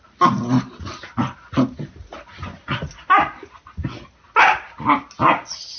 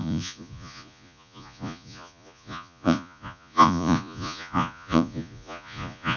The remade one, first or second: second